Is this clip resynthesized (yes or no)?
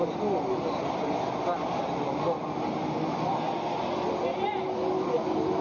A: no